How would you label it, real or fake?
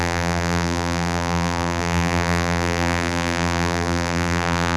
fake